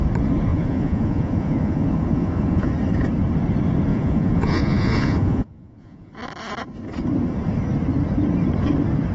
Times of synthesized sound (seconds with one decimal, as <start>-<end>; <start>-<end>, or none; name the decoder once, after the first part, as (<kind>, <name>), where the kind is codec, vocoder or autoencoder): 0.5-2.7 (vocoder, Vocos); 3.9-6.1